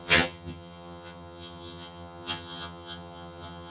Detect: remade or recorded remade